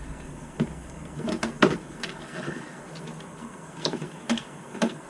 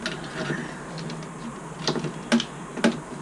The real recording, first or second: second